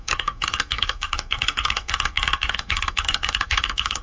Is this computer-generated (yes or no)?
yes